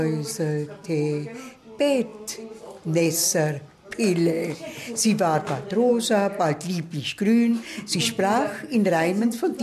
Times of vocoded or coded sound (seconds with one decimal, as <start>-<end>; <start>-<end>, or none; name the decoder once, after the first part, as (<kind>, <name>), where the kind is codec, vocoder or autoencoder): none